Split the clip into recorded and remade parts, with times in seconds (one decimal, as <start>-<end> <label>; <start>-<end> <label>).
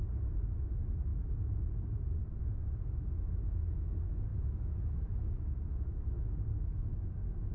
0.0-0.7 recorded; 0.7-1.1 remade; 1.1-2.4 recorded; 2.4-7.5 remade